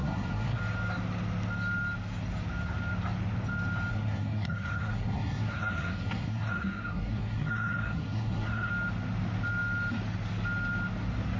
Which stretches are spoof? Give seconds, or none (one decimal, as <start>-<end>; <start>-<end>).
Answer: 0.0-0.6; 3.9-8.7